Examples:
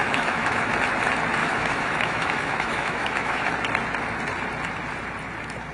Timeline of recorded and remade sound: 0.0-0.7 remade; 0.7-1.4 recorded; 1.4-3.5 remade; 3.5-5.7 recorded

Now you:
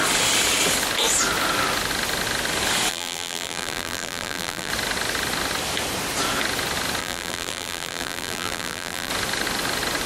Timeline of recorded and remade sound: 0.0-2.9 recorded; 2.9-4.7 remade; 4.7-7.0 recorded; 7.0-9.1 remade; 9.1-10.1 recorded

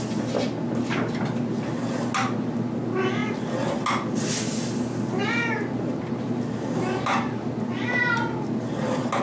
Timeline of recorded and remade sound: 0.0-9.2 recorded

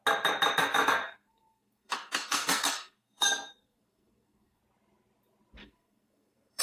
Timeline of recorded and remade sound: 0.0-0.6 recorded; 0.6-4.6 remade; 4.6-5.6 recorded; 5.6-6.6 remade

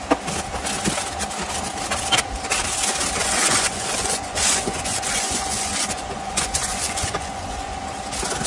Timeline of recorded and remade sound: 0.0-3.2 recorded; 3.2-7.9 remade; 7.9-8.5 recorded